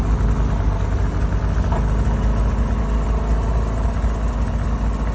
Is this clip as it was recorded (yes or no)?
yes